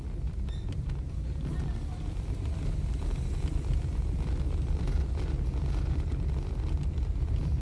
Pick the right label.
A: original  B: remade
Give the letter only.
A